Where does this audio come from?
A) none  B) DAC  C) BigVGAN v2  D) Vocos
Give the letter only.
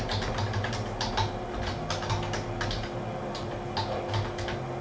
A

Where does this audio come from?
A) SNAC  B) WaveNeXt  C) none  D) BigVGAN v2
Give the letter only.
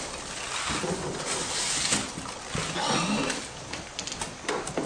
C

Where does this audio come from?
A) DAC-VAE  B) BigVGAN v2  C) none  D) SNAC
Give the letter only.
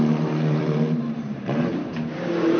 B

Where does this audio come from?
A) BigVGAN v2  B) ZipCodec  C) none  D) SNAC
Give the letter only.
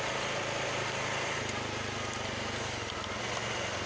C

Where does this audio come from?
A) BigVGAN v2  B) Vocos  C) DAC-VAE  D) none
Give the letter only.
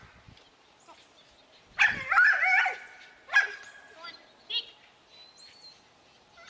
D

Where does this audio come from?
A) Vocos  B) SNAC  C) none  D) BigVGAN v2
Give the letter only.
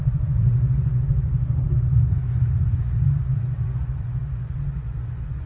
A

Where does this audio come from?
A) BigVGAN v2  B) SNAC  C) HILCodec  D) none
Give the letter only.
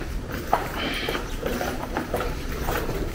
A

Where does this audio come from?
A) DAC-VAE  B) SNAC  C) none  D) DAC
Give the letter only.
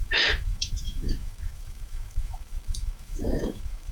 A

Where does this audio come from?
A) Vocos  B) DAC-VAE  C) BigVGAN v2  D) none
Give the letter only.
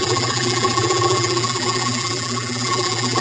C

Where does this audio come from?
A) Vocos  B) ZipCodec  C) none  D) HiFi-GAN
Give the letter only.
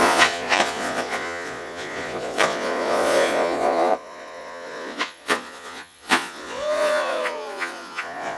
A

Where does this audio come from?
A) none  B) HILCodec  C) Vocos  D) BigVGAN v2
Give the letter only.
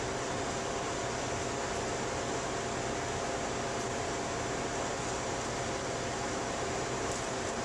A